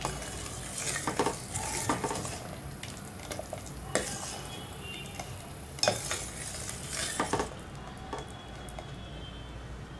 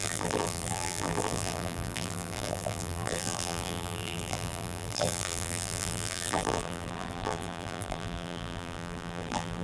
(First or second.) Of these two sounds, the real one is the first